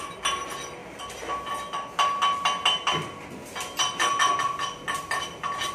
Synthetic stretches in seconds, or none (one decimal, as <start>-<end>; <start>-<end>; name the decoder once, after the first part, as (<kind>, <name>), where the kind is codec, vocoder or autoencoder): none